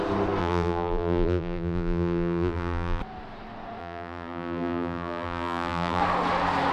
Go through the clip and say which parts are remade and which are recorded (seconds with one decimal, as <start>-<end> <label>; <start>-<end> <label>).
0.0-0.4 recorded; 0.4-3.0 remade; 3.0-3.8 recorded; 3.8-6.0 remade; 6.0-6.7 recorded